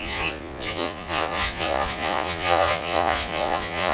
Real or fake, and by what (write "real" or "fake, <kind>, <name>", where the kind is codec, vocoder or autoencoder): fake, vocoder, Vocos